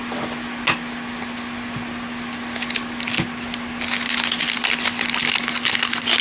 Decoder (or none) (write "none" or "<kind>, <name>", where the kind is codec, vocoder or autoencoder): none